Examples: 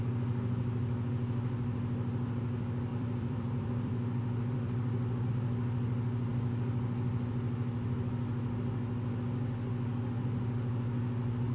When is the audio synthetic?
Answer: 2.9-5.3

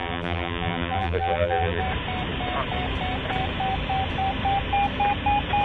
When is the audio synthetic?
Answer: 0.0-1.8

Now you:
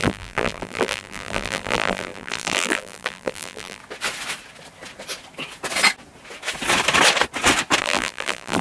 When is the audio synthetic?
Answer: 0.0-3.8; 7.8-8.6